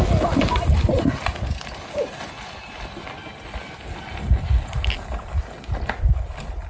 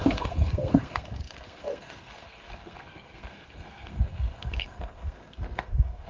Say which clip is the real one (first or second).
first